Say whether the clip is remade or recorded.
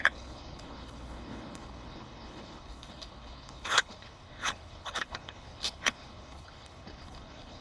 remade